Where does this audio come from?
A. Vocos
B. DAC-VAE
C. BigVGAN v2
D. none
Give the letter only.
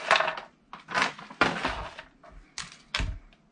D